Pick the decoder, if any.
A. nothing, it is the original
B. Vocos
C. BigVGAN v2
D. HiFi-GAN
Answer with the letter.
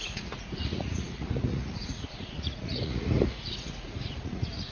B